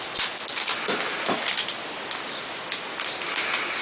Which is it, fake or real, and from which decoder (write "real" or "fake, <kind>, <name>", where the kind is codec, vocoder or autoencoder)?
real